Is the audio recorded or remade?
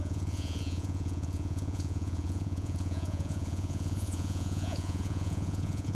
remade